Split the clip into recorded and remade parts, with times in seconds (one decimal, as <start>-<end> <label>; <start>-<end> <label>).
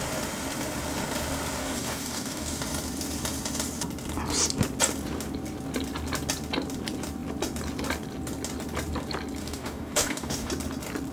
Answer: 0.0-1.6 recorded; 1.6-2.6 remade; 2.6-9.4 recorded; 9.4-10.5 remade; 10.5-11.1 recorded